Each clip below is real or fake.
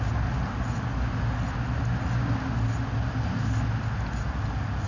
real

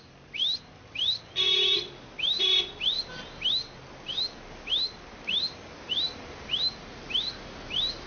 real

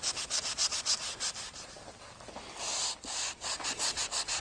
real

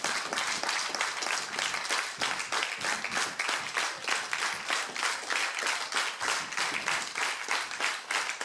real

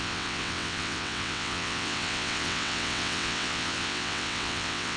fake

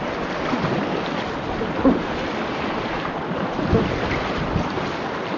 real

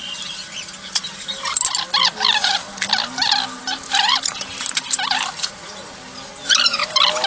real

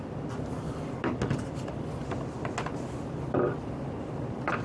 real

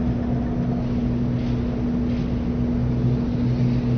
real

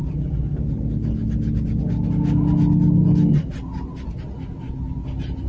real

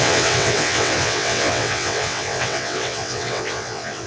fake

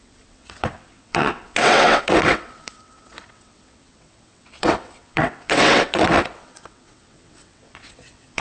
fake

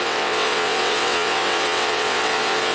fake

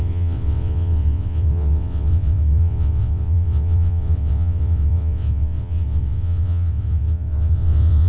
fake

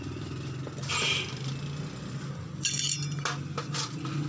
real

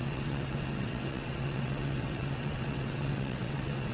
fake